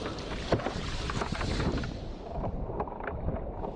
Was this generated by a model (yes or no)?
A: yes